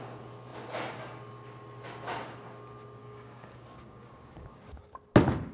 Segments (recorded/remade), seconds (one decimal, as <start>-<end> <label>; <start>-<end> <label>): 0.0-3.0 recorded; 3.0-4.8 remade; 4.8-5.5 recorded